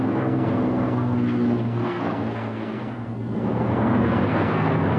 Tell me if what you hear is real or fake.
fake